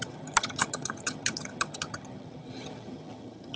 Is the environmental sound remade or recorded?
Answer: remade